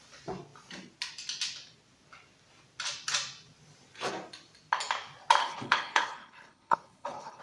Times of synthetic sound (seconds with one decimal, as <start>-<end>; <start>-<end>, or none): 5.4-7.4